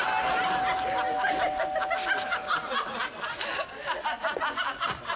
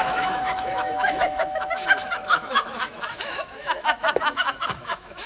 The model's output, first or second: second